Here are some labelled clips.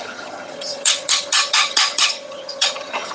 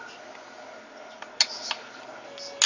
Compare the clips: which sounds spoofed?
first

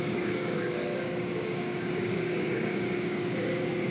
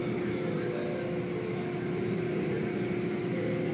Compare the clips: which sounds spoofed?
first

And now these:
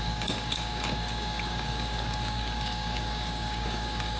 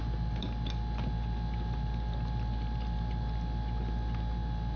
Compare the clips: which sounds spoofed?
first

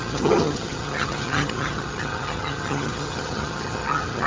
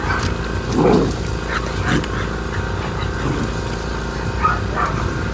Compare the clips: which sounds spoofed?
first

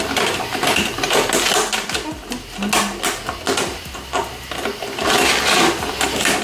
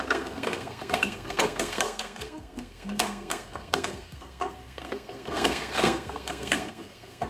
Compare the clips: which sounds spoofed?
second